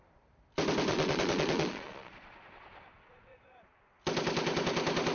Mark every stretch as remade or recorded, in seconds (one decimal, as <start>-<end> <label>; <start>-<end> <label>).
0.0-0.9 recorded; 0.9-4.0 remade; 4.0-5.1 recorded